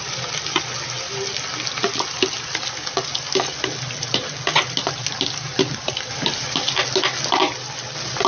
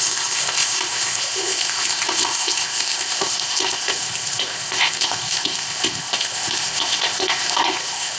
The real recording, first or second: first